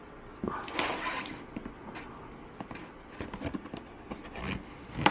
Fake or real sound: real